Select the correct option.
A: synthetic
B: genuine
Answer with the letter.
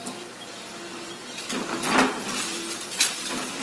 A